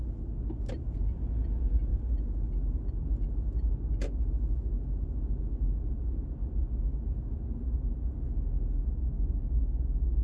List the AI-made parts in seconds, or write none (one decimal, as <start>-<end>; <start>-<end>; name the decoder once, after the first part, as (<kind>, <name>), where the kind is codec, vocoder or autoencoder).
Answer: none